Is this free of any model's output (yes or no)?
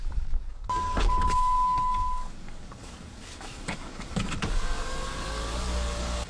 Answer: no